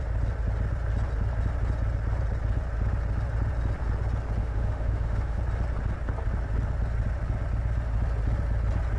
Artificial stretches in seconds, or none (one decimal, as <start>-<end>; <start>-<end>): 4.4-5.4